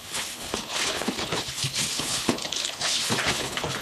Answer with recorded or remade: remade